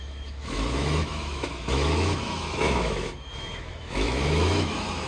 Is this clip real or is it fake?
fake